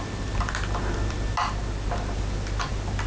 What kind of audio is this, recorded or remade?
recorded